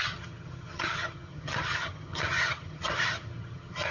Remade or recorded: remade